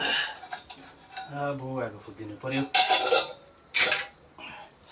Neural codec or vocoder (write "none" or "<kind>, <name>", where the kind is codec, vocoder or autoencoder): none